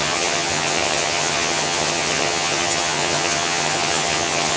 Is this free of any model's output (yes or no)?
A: no